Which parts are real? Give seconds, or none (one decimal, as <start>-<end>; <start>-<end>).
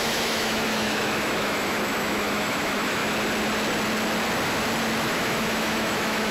3.0-5.0